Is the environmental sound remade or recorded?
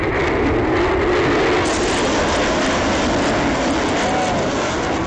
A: recorded